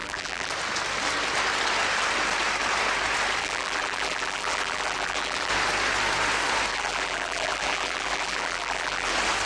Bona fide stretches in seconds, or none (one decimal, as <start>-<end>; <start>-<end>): 0.5-3.4; 5.5-6.7; 9.1-9.5